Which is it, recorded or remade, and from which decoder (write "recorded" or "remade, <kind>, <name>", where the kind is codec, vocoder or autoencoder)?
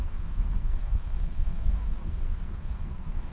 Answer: remade, codec, SNAC